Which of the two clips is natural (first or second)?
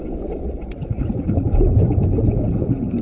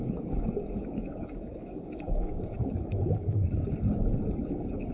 first